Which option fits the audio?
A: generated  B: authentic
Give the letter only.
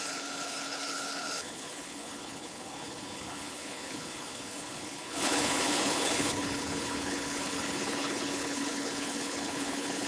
A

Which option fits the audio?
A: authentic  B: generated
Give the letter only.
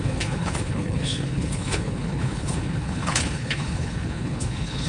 B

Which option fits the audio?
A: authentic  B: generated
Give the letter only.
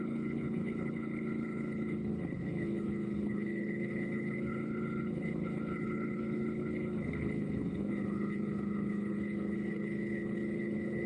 B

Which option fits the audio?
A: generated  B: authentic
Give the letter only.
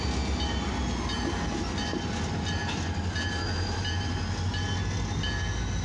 B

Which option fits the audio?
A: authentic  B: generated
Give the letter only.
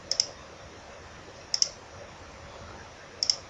A